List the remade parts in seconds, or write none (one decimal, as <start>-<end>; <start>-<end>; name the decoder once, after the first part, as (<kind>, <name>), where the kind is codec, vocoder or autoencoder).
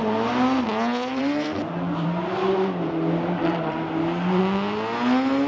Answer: 1.1-4.4 (vocoder, BigVGAN v2)